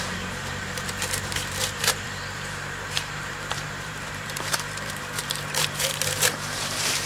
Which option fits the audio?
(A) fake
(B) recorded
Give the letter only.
A